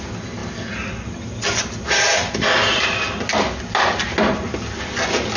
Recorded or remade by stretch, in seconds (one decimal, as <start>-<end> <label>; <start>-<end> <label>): 0.0-5.4 recorded